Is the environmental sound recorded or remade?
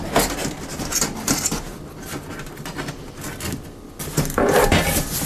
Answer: recorded